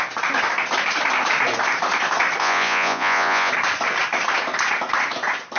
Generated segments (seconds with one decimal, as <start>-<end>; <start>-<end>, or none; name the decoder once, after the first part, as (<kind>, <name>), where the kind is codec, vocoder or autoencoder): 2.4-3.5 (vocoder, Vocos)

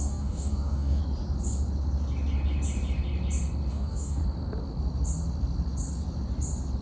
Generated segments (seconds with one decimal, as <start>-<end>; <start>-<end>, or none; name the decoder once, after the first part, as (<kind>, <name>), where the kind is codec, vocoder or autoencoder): 0.0-1.0 (codec, DAC); 3.7-4.2

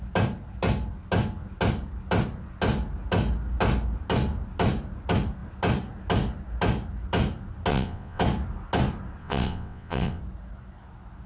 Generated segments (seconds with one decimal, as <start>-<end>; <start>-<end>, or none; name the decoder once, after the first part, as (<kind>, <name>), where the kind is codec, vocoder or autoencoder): 7.7-8.2 (vocoder, WaveNeXt); 9.2-10.2